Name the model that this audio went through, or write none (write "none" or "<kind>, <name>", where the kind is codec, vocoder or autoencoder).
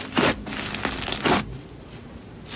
none